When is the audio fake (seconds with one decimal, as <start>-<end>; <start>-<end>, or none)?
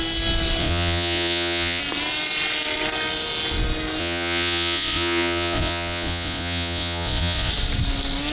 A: 0.6-1.8; 4.0-7.5